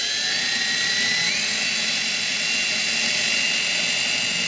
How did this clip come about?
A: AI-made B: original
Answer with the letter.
B